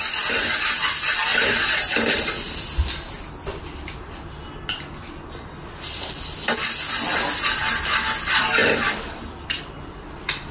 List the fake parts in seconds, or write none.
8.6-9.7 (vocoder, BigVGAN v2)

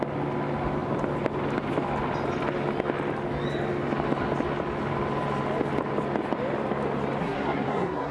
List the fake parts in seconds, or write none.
7.2-8.1 (codec, SNAC)

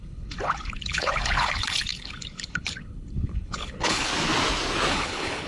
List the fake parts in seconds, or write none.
0.0-4.1 (codec, HILCodec); 4.9-5.5

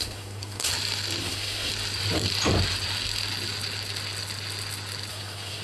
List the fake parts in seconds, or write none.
0.0-0.7 (codec, SNAC); 1.2-1.7; 5.1-5.6

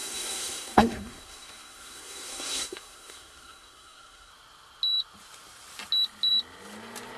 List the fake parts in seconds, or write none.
0.0-4.3 (codec, SNAC)

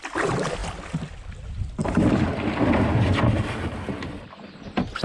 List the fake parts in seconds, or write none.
none

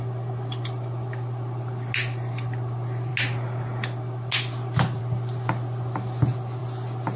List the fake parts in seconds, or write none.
none